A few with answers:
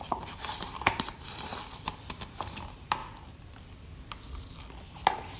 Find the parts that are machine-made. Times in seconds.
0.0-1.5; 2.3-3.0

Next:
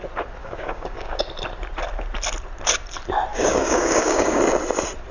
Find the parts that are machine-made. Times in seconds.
0.4-1.2; 3.3-4.4

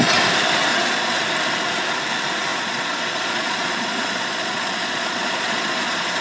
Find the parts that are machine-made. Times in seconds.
0.7-1.2; 2.5-6.2

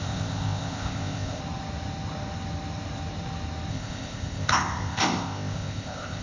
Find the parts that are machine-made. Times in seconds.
0.0-1.4; 3.7-6.2

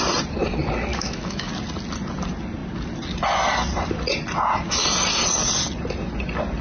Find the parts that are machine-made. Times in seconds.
0.9-1.5